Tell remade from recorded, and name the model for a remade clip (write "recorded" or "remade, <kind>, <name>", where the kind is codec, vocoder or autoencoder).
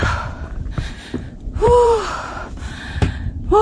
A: remade, vocoder, BigVGAN v2